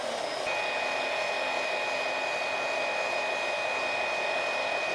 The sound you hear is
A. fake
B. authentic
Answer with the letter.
B